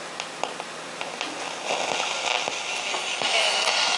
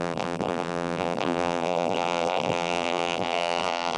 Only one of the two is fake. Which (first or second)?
second